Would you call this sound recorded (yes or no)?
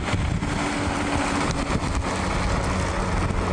yes